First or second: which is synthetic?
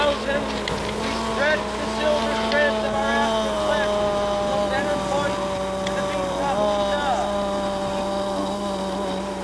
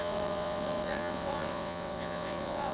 second